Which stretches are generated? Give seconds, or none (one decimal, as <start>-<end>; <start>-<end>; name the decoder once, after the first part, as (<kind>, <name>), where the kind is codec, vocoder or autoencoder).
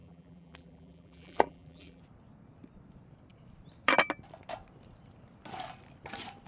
0.0-2.0 (vocoder, BigVGAN v2)